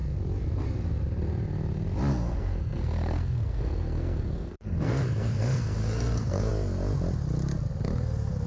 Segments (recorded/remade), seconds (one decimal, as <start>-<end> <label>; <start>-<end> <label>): 0.0-2.1 recorded; 2.1-6.5 remade; 6.5-8.5 recorded